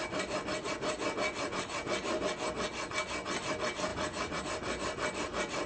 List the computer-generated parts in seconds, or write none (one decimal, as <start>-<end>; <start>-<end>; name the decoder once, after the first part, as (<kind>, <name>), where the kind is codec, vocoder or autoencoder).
3.9-4.4 (vocoder, Vocos)